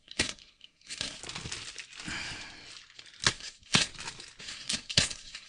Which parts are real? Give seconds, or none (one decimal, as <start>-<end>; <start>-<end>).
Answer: 1.2-3.3; 3.9-4.4